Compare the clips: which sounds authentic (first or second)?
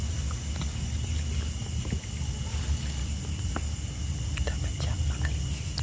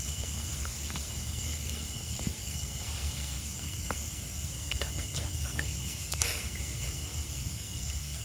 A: first